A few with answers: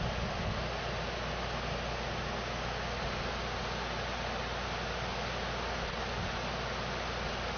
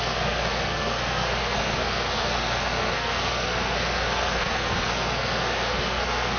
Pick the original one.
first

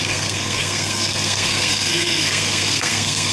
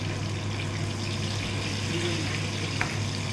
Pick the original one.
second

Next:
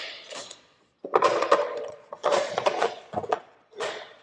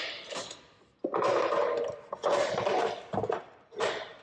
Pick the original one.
second